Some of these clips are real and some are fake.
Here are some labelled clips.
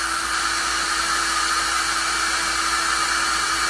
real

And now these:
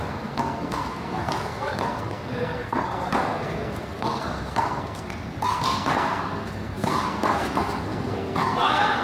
fake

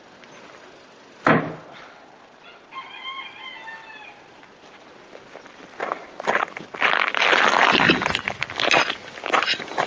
real